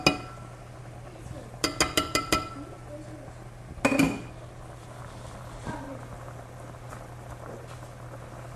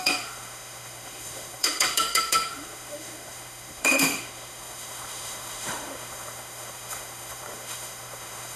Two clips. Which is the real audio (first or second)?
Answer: first